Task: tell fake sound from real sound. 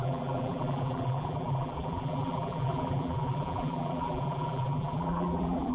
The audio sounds fake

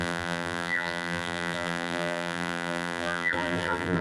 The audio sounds fake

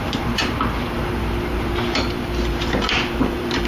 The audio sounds fake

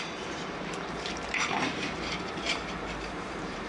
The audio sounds fake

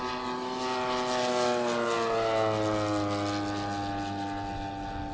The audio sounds real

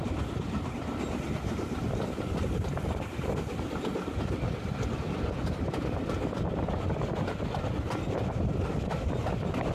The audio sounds fake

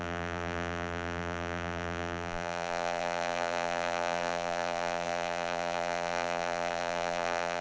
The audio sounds fake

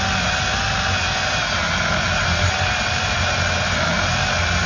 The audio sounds real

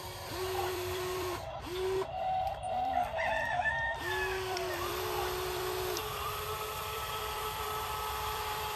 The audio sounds fake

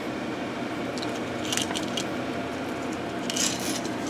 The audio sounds real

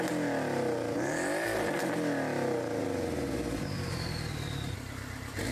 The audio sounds real